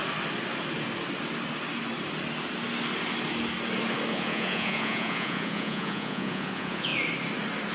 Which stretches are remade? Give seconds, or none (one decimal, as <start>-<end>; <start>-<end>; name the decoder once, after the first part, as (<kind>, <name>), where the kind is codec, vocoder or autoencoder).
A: 4.1-6.9 (vocoder, Vocos)